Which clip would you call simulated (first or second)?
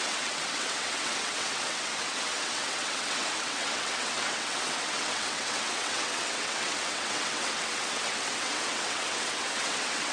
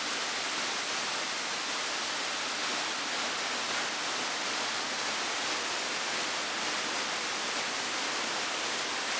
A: first